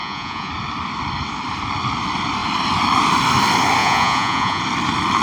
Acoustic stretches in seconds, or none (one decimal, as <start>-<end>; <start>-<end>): 0.5-3.8; 4.6-5.2

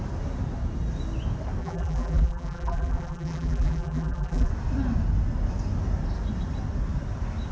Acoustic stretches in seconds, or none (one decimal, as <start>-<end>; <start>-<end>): 0.0-1.6; 4.5-7.5

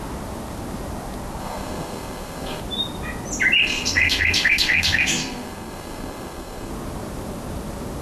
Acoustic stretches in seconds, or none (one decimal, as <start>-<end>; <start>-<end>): 0.0-1.4; 2.6-3.6; 6.7-8.0